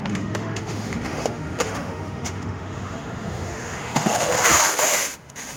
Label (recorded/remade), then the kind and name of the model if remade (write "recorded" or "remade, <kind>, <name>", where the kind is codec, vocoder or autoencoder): remade, autoencoder, DAC-VAE